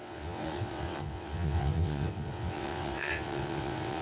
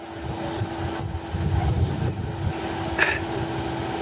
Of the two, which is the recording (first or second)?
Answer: second